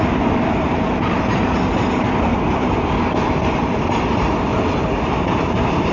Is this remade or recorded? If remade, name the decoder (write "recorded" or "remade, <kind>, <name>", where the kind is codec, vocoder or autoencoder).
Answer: recorded